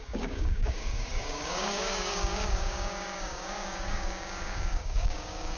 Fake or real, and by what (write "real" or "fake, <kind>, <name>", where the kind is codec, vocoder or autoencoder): fake, codec, DAC